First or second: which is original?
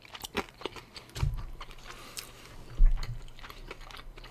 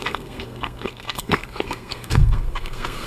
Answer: first